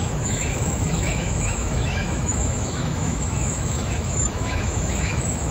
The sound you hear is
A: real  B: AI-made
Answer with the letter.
B